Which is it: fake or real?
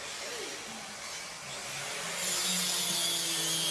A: real